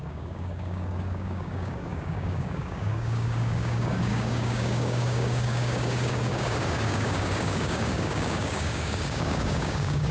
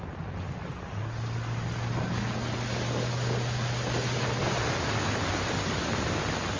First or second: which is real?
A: second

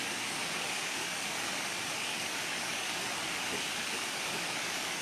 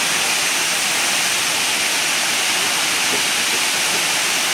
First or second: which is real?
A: second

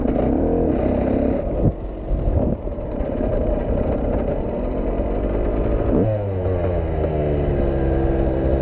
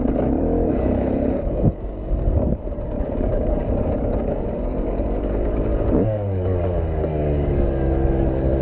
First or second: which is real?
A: first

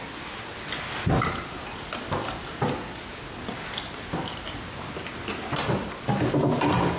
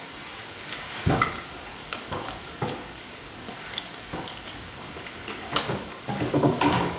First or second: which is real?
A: first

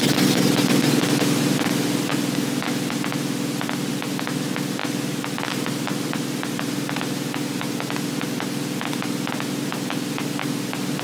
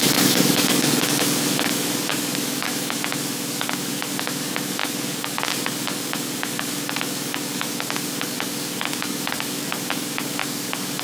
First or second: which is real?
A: first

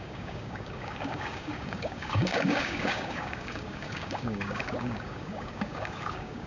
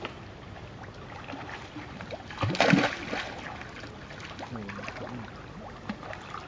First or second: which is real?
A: second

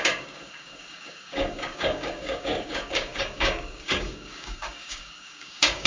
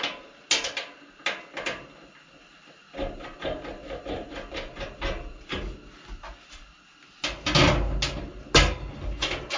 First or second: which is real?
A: second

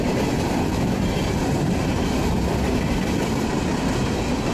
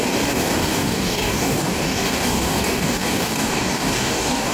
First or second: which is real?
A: first